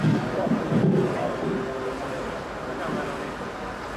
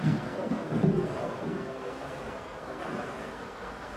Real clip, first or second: first